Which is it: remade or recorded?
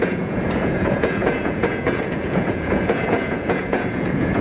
remade